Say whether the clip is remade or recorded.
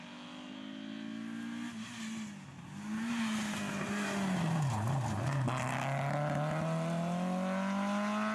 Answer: recorded